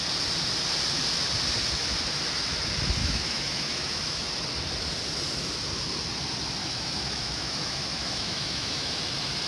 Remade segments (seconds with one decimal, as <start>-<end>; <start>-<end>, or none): 3.0-4.3; 6.6-9.0